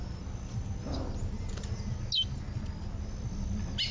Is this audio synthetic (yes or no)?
no